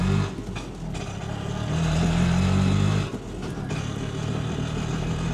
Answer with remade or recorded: recorded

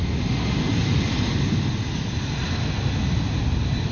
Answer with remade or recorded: recorded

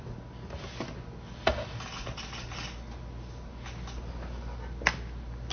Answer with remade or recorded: recorded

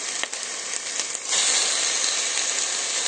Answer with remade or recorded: recorded